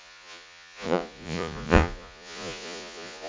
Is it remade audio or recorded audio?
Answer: remade